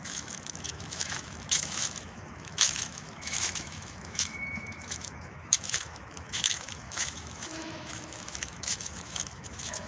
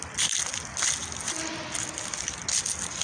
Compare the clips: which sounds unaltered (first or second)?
second